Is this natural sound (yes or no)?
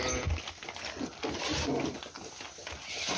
yes